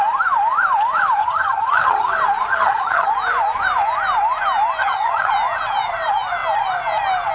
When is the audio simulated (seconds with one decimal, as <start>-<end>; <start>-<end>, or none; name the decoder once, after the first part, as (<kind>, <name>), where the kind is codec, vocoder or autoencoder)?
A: 1.2-2.1 (vocoder, HiFi-GAN); 2.5-3.1; 4.8-5.3